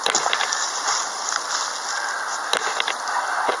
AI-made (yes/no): no